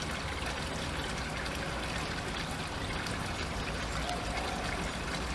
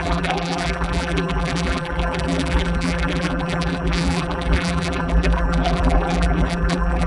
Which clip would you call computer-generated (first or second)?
second